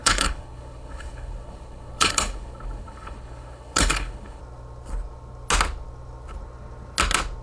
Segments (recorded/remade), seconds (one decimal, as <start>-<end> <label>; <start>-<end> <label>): 0.0-4.4 remade; 4.4-7.4 recorded